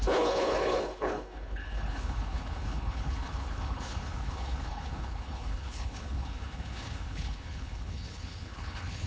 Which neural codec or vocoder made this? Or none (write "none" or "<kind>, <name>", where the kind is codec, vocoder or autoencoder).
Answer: codec, HILCodec